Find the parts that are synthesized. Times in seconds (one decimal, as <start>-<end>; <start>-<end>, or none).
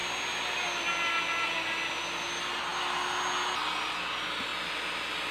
none